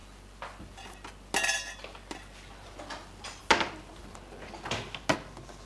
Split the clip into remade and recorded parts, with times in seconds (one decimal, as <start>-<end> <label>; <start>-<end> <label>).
0.0-5.7 recorded

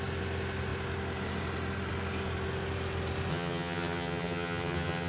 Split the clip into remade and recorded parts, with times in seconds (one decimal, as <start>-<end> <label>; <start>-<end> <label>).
0.0-3.3 recorded; 3.3-5.1 remade

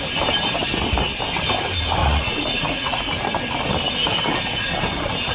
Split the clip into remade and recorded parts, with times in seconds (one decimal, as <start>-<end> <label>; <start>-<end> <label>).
0.0-2.0 recorded; 2.0-3.2 remade; 3.2-5.3 recorded

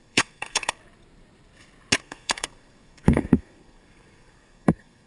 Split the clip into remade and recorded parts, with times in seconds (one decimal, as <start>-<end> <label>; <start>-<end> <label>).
0.0-0.8 remade; 0.8-2.0 recorded; 2.0-5.1 remade

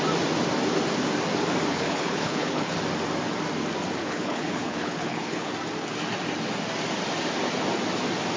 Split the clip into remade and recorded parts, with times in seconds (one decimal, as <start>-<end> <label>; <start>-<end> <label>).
0.0-1.7 recorded; 1.7-2.8 remade; 2.8-4.0 recorded; 4.0-5.5 remade; 5.5-8.4 recorded

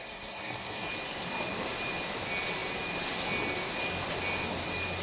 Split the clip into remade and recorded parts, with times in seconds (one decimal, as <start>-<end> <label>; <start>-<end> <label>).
0.0-0.9 remade; 0.9-5.0 recorded

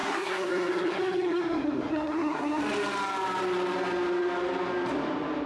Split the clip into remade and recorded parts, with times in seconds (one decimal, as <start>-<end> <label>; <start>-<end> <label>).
0.0-2.6 remade; 2.6-5.5 recorded

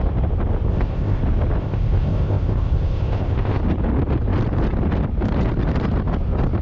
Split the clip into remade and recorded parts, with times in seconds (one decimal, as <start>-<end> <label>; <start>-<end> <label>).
0.0-0.7 recorded; 0.7-1.2 remade; 1.2-1.6 recorded; 1.6-3.6 remade; 3.6-6.6 recorded